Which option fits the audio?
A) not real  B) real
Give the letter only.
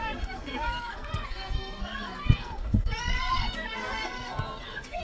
A